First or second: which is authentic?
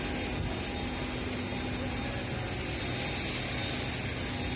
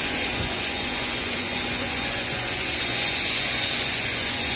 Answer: first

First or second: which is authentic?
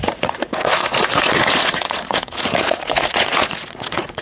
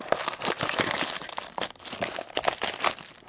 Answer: second